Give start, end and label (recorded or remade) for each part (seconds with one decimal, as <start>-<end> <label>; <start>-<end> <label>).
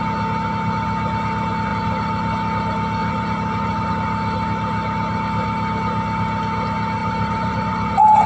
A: 0.0-1.7 recorded; 1.7-2.3 remade; 2.3-3.0 recorded; 3.0-3.9 remade; 3.9-7.0 recorded; 7.0-7.9 remade; 7.9-8.3 recorded